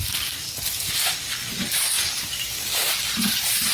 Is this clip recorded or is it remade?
recorded